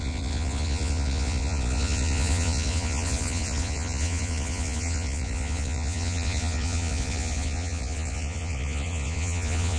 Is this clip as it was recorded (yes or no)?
no